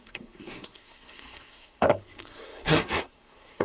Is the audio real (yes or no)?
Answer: no